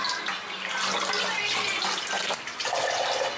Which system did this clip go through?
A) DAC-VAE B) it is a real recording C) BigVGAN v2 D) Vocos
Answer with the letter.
B